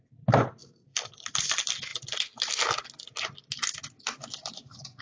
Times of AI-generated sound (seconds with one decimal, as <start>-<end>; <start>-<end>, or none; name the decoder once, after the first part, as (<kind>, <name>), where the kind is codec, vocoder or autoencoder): none